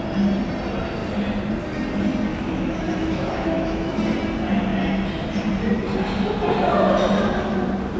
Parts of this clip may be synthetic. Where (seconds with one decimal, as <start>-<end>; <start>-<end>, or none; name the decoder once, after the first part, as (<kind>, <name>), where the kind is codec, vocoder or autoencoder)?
2.3-4.0 (autoencoder, DAC-VAE)

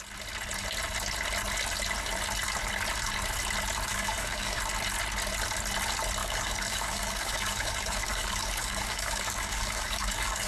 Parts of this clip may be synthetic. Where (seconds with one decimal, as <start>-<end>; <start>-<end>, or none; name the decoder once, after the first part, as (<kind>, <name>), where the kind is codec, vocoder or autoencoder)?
3.9-4.6 (codec, DAC); 6.2-10.5

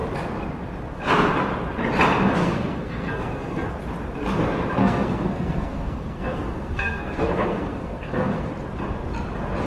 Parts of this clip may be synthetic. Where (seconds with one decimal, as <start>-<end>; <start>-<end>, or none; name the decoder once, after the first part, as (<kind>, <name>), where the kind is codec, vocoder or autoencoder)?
2.4-3.7 (codec, SNAC); 4.8-8.5

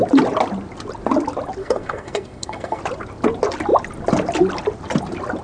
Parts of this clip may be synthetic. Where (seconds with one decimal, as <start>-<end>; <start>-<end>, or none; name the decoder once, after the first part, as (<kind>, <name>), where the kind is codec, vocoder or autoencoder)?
1.6-2.8 (codec, SNAC)

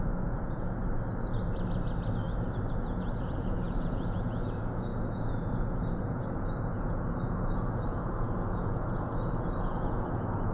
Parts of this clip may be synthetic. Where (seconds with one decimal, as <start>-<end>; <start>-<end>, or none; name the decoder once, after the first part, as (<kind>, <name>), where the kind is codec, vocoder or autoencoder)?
0.0-0.8 (vocoder, Vocos); 2.7-10.5

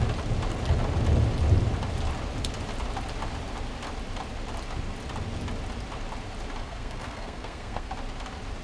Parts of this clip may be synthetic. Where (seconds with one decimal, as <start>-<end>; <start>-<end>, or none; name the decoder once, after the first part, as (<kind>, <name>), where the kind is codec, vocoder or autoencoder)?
6.6-7.9 (codec, SNAC)

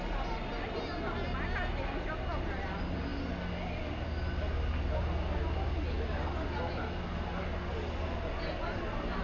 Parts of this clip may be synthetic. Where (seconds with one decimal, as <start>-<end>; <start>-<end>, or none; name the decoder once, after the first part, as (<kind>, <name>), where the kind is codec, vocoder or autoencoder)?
none

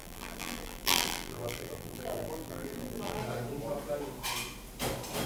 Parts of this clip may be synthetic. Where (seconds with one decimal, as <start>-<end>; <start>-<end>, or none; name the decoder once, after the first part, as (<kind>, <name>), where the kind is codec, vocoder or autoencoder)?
0.0-3.2 (vocoder, BigVGAN v2)